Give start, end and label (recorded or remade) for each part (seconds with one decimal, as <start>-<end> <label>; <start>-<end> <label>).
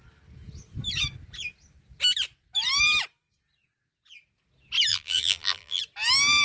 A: 0.0-4.9 recorded; 4.9-5.8 remade; 5.8-6.4 recorded